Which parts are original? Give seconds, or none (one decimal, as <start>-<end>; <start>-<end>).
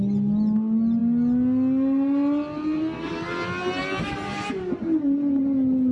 0.0-5.9